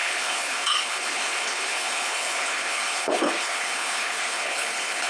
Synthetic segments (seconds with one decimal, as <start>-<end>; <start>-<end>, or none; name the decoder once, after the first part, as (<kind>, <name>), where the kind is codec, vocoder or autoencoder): 0.0-5.1 (codec, HILCodec)